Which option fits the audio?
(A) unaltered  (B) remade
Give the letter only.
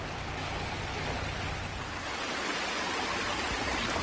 A